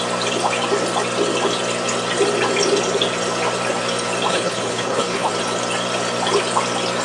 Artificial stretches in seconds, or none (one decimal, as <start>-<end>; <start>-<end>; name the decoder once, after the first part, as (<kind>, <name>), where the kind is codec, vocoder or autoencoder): 4.3-5.3 (codec, HILCodec)